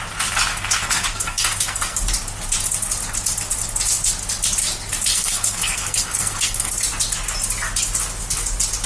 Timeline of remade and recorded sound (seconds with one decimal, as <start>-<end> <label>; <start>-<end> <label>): 0.0-0.5 recorded; 0.5-2.0 remade; 2.0-5.1 recorded; 5.1-6.7 remade; 6.7-8.9 recorded